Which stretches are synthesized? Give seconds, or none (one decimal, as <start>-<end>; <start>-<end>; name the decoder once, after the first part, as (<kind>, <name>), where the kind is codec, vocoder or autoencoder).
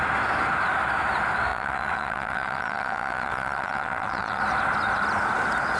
1.5-4.4 (vocoder, WaveNeXt)